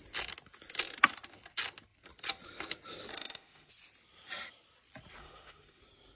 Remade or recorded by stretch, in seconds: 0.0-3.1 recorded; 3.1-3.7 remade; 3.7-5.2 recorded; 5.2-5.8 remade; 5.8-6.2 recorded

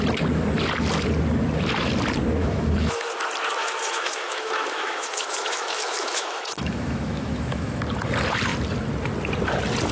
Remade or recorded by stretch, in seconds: 0.0-2.4 recorded; 2.4-3.1 remade; 3.1-3.6 recorded; 3.6-7.8 remade; 7.8-9.9 recorded

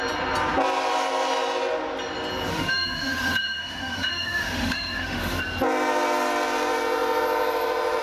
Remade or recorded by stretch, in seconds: 0.0-2.5 recorded; 2.5-5.4 remade; 5.4-8.0 recorded

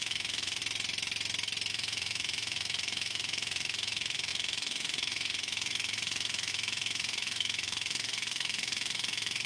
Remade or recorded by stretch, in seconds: 0.0-0.6 remade; 0.6-1.7 recorded; 1.7-9.5 remade

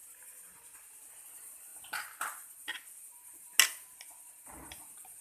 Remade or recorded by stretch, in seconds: 0.0-5.2 recorded

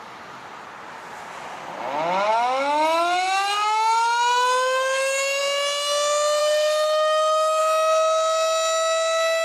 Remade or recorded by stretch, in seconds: 0.0-2.3 recorded; 2.3-5.4 remade; 5.4-6.4 recorded; 6.4-7.6 remade; 7.6-9.4 recorded

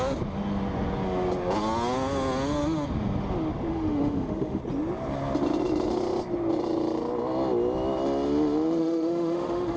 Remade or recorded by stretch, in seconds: 0.0-3.7 recorded; 3.7-4.6 remade; 4.6-8.8 recorded; 8.8-9.8 remade